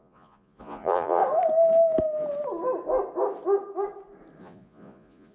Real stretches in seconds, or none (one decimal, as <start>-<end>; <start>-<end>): 1.2-4.4